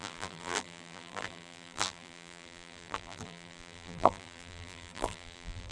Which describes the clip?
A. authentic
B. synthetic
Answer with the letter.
B